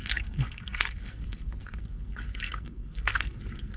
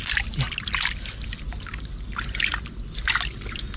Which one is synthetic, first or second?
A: first